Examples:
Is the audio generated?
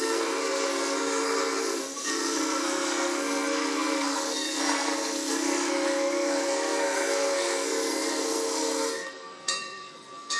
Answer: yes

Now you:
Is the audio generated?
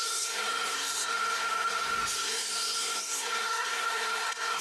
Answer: yes